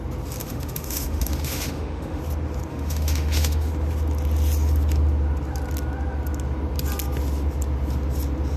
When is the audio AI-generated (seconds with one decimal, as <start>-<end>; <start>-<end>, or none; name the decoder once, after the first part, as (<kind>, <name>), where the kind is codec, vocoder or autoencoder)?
0.4-2.2 (autoencoder, DAC-VAE); 2.7-3.7